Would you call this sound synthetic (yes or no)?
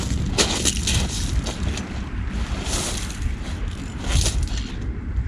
no